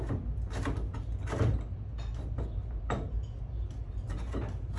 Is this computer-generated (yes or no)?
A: no